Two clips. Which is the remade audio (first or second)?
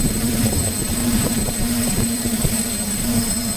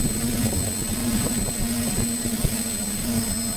first